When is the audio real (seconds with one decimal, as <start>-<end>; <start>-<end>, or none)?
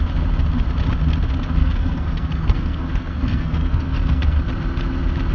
0.0-1.6; 4.4-5.3